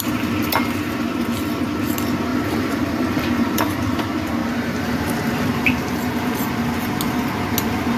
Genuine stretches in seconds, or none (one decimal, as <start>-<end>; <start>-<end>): 0.0-2.3; 3.7-4.4; 6.5-8.0